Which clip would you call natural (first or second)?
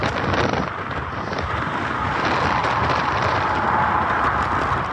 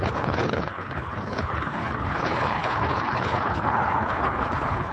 first